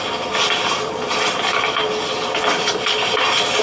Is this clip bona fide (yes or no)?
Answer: yes